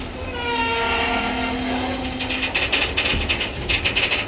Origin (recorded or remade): recorded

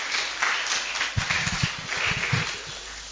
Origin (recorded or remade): recorded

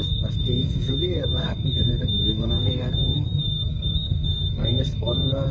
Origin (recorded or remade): remade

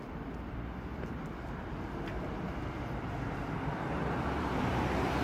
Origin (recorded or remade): recorded